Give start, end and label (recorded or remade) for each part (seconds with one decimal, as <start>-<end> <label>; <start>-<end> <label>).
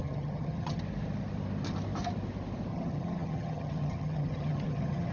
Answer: 0.0-0.8 remade; 0.8-2.7 recorded; 2.7-5.1 remade